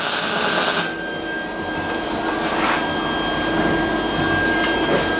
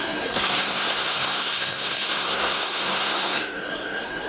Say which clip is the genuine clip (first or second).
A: first